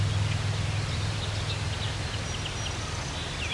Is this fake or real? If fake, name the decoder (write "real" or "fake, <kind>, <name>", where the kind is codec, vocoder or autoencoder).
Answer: real